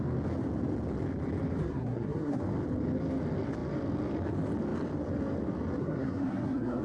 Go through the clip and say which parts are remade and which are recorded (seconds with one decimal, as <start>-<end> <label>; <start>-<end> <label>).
0.0-1.6 recorded; 1.6-2.4 remade; 2.4-5.8 recorded; 5.8-6.8 remade